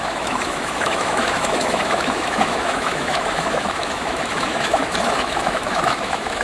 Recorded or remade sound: remade